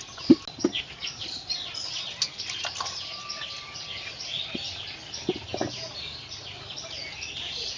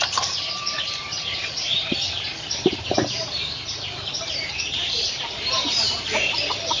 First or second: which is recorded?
first